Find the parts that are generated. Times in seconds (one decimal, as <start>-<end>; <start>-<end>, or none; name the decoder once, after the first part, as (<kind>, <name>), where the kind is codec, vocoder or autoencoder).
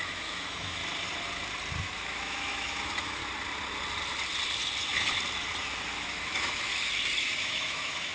0.0-0.8 (autoencoder, DAC-VAE); 1.8-3.2; 5.9-6.7; 7.2-8.1